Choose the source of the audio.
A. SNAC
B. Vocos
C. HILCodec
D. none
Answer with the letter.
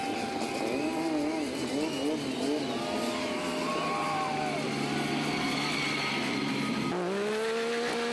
D